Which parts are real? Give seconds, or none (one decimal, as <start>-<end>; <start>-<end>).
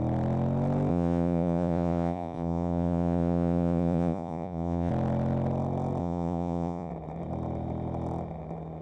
0.0-0.9; 4.9-6.0; 6.9-8.8